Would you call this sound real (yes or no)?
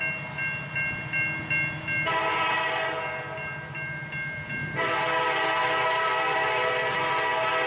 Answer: yes